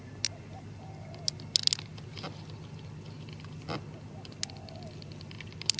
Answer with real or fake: real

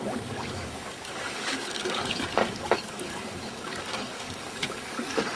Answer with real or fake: fake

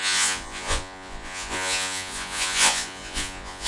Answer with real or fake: fake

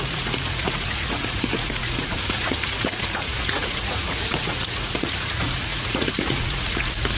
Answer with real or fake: fake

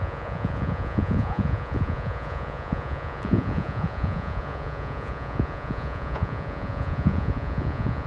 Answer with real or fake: fake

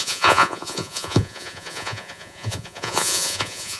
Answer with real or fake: fake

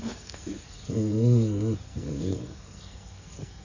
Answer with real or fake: fake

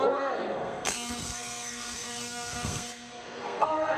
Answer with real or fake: fake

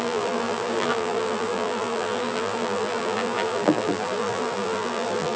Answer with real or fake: fake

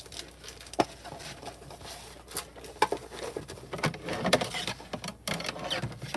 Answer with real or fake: real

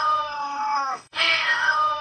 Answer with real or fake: fake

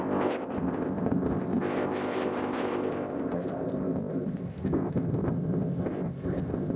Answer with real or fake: fake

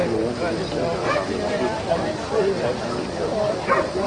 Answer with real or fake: real